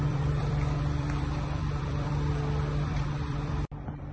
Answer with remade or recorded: remade